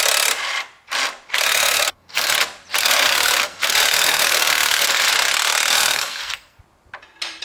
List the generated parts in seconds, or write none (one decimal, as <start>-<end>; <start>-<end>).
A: 1.5-2.3; 2.8-5.1; 5.7-6.6